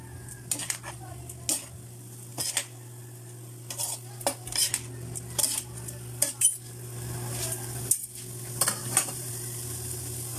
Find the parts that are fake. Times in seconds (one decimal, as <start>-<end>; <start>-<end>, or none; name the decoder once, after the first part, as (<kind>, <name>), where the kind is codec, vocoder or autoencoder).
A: 8.8-9.3 (vocoder, BigVGAN v2)